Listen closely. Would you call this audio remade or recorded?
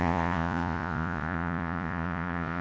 remade